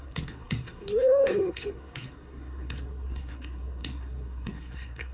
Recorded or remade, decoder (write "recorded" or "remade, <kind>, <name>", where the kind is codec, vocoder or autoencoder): remade, codec, SNAC